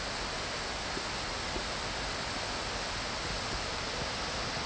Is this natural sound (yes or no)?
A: yes